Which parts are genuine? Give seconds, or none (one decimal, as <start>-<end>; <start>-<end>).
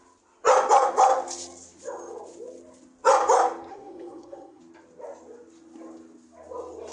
0.0-3.7; 4.6-6.9